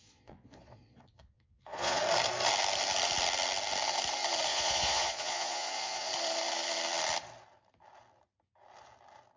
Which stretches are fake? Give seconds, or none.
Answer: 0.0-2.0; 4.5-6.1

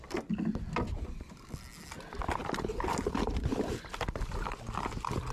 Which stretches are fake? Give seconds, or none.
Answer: none

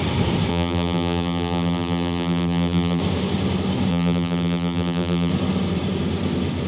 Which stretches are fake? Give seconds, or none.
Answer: 0.5-3.0; 3.9-5.3

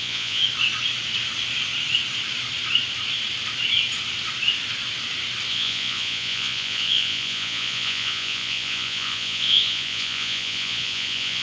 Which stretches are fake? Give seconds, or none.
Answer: 0.0-0.4; 5.5-11.4

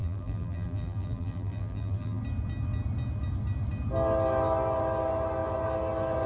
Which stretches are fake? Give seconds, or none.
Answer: 0.0-2.2